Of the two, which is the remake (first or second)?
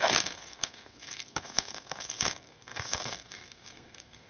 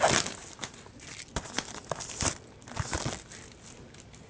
first